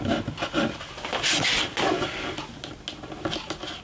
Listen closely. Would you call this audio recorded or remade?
recorded